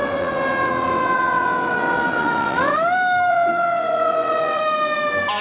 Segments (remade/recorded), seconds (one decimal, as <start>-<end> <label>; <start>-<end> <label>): 0.0-2.7 remade; 2.7-3.3 recorded; 3.3-4.6 remade; 4.6-5.4 recorded